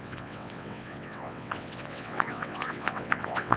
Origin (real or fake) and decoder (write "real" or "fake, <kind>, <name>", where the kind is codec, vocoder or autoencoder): fake, vocoder, WaveNeXt